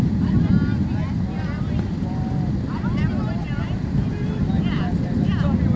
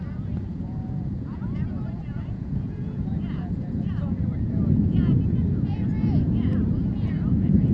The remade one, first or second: second